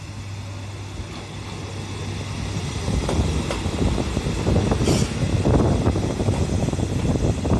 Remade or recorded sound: recorded